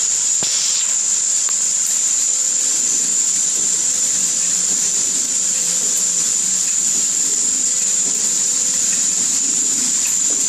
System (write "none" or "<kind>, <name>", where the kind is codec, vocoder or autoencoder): vocoder, BigVGAN v2